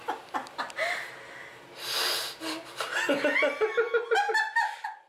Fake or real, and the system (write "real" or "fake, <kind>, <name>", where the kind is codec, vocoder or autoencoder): real